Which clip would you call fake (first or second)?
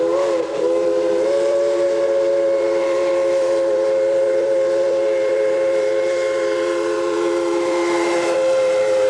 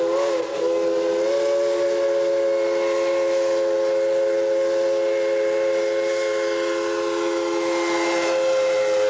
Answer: first